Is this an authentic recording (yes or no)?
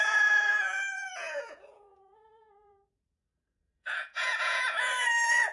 no